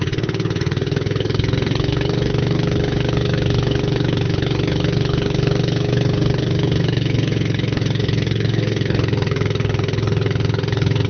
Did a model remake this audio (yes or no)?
yes